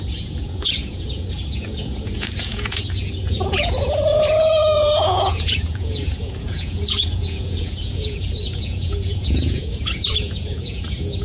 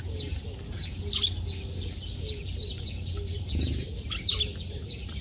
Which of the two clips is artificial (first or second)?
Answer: first